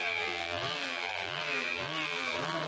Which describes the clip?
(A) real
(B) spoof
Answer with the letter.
B